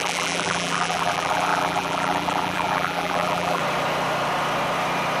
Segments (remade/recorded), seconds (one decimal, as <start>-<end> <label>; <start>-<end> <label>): 0.0-3.6 remade; 3.6-5.2 recorded